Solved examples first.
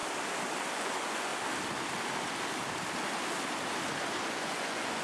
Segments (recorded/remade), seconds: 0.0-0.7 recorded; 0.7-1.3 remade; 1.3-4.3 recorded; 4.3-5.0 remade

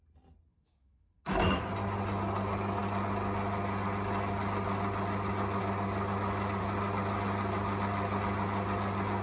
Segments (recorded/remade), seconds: 0.0-0.5 recorded; 0.5-1.6 remade; 1.6-9.2 recorded

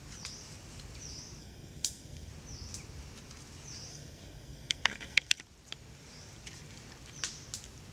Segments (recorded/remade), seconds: 0.0-1.4 recorded; 1.4-2.3 remade; 2.3-3.9 recorded; 3.9-5.4 remade; 5.4-7.9 recorded

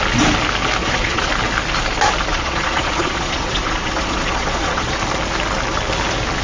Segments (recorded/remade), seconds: 0.0-0.8 recorded; 0.8-1.3 remade; 1.3-2.3 recorded; 2.3-5.0 remade; 5.0-6.4 recorded

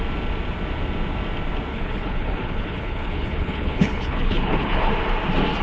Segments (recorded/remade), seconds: 0.0-1.7 recorded; 1.7-4.9 remade; 4.9-5.6 recorded

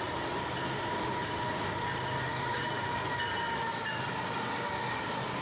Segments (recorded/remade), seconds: 0.0-2.3 recorded; 2.3-4.7 remade; 4.7-5.4 recorded

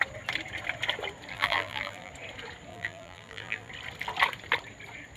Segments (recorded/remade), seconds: 0.0-1.3 recorded; 1.3-2.1 remade; 2.1-2.7 recorded; 2.7-3.7 remade; 3.7-5.2 recorded

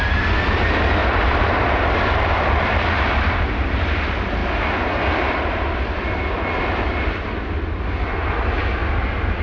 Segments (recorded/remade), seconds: 0.0-1.0 recorded; 1.0-3.4 remade; 3.4-9.4 recorded